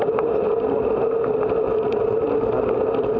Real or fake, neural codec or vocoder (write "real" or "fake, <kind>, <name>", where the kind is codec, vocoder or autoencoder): real